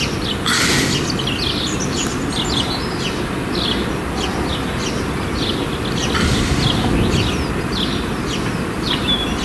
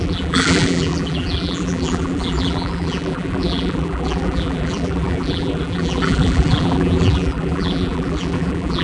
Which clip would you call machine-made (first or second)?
second